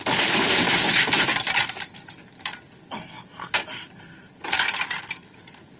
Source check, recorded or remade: recorded